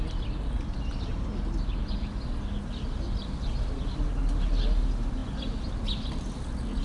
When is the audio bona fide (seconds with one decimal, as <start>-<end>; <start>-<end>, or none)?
0.0-6.8